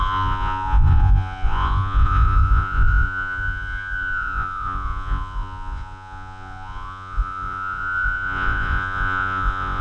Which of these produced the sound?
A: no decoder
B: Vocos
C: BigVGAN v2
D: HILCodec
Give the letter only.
B